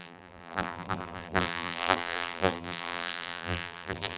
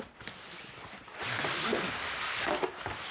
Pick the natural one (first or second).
second